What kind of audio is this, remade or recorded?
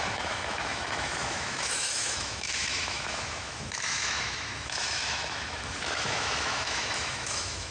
remade